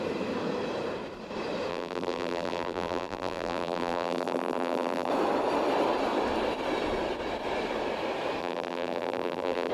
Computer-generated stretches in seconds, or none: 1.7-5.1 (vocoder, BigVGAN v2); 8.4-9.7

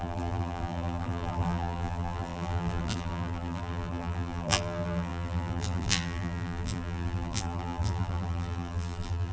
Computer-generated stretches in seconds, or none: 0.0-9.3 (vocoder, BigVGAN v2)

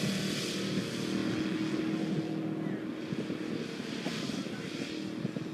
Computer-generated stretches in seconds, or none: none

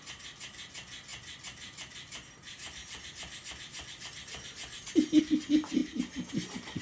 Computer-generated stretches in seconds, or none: 1.1-5.2 (vocoder, BigVGAN v2)

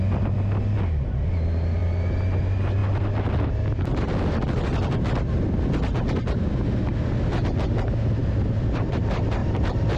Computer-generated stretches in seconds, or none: 9.4-10.0 (vocoder, BigVGAN v2)

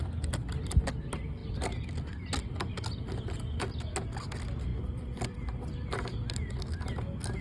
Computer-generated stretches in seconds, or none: none